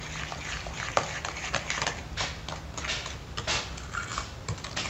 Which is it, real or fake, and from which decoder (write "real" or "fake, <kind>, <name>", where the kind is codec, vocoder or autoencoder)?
real